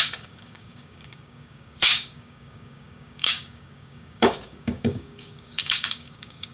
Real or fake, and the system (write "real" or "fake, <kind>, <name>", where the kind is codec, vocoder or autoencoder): fake, codec, DAC